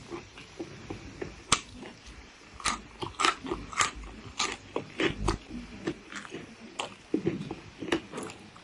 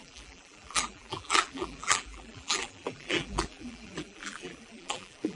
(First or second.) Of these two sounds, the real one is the first